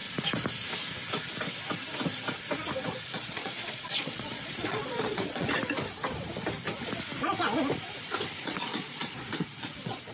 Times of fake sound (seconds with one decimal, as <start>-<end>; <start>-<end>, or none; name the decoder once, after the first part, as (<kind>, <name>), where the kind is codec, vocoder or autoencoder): 3.1-5.5 (vocoder, Vocos); 8.4-10.1